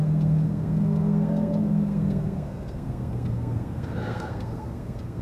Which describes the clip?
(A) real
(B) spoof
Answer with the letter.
B